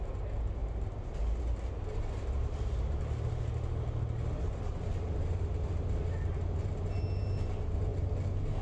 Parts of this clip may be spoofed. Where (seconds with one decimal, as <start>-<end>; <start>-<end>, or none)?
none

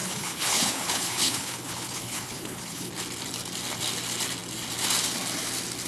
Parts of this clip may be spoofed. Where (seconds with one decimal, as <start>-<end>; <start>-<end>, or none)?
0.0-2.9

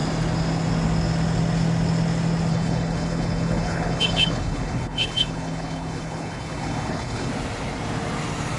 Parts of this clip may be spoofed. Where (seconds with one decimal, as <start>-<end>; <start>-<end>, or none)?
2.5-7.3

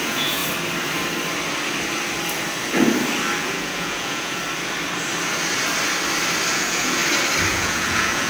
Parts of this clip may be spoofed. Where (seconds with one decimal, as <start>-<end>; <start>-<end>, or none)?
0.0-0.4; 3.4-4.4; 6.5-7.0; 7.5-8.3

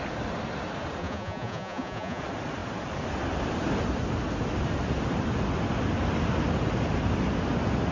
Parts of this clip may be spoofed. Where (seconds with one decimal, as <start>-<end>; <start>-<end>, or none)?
1.0-2.2